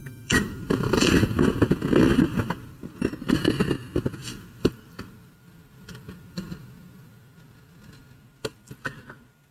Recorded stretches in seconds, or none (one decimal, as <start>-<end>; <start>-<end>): 1.1-2.3; 3.0-4.2; 5.4-9.5